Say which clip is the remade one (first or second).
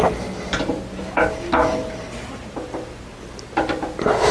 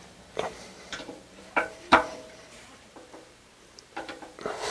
second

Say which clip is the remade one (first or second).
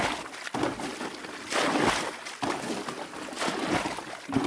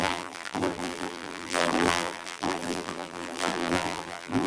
second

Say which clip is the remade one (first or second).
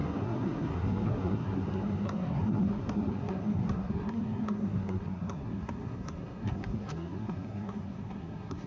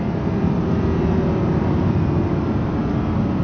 first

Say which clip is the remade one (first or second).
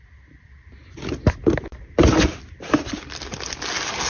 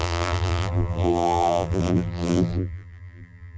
second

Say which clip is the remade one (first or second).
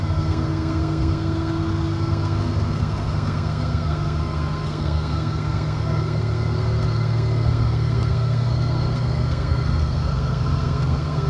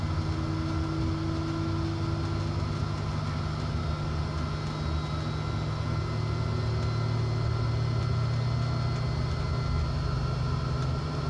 first